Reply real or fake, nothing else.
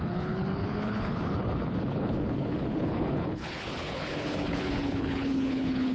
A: fake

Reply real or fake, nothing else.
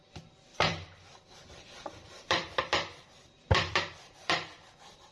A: fake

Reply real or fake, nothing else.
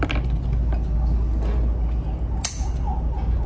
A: real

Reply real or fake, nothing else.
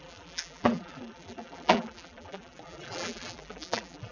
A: fake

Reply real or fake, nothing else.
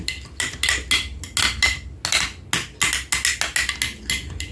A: real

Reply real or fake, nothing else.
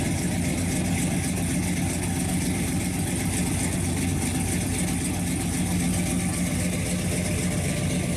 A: real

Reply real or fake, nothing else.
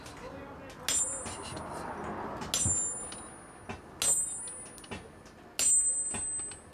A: real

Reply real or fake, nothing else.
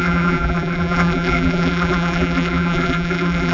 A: fake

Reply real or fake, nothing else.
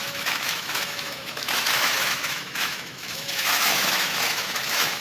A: fake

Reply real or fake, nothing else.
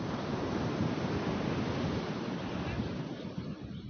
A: fake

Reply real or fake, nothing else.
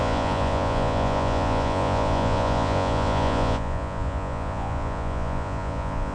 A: fake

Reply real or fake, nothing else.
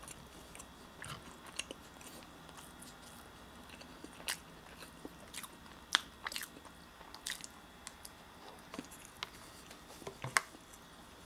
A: real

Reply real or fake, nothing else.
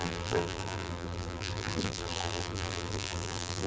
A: fake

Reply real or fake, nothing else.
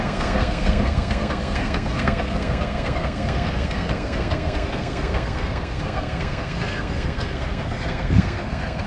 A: fake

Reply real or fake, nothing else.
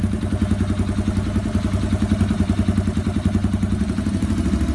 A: real